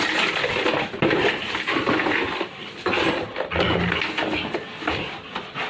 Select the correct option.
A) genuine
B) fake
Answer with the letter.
A